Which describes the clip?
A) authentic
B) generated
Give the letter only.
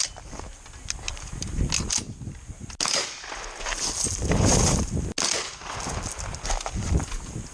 A